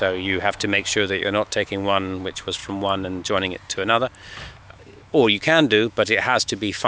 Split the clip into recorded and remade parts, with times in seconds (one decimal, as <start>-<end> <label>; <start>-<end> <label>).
0.0-2.6 remade; 2.6-4.5 recorded; 4.5-6.9 remade